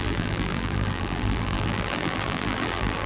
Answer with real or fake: fake